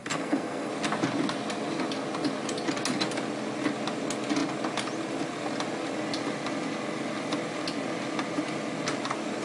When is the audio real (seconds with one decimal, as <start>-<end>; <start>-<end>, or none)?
0.7-9.4